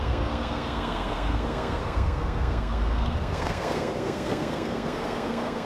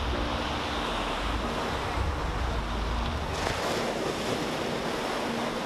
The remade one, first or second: first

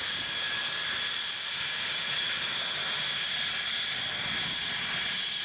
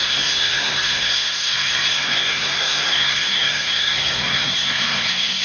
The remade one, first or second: second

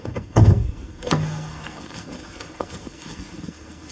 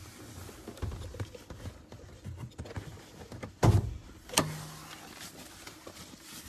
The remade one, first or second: first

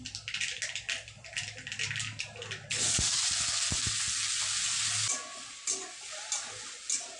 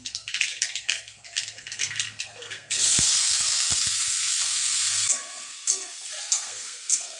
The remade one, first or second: second